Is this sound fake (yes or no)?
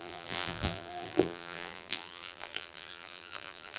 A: yes